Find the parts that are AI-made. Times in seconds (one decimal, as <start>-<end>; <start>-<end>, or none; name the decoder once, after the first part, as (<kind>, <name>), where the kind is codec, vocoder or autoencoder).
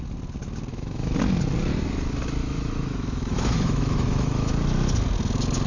0.7-1.2 (autoencoder, DAC-VAE); 2.4-4.5